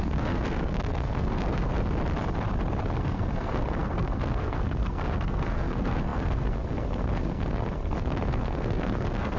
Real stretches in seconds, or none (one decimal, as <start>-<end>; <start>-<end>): 1.7-2.9